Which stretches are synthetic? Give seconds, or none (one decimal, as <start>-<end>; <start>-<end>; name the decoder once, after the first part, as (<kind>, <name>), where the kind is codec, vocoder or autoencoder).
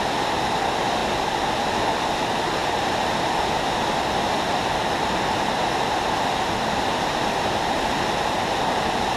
none